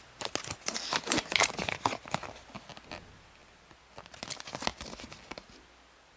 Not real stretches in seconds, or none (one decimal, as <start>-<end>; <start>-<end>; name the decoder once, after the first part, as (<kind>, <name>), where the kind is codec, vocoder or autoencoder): none